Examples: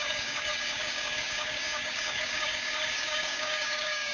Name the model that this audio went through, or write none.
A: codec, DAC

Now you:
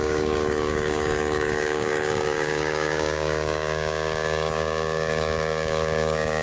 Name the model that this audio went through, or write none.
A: codec, DAC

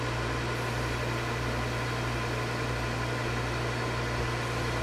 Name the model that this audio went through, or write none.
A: none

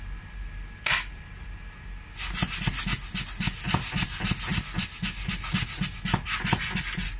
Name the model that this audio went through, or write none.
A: none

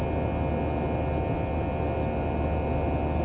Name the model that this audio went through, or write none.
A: none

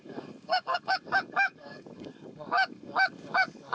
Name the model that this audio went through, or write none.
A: codec, DAC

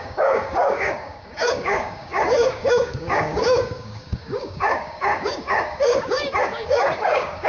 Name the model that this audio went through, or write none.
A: codec, DAC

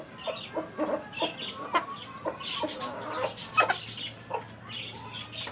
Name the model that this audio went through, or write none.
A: none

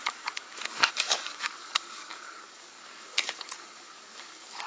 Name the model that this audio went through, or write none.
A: codec, DAC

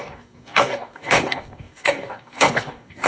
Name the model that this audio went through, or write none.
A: codec, DAC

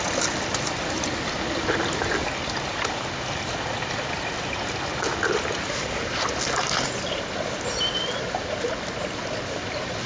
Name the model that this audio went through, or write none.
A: none